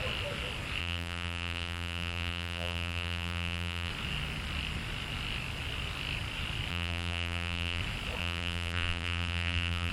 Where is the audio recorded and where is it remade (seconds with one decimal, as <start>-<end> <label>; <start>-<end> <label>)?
0.0-0.8 recorded; 0.8-3.9 remade; 3.9-6.7 recorded; 6.7-7.8 remade; 7.8-8.2 recorded; 8.2-9.9 remade